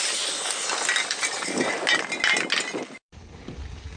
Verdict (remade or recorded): recorded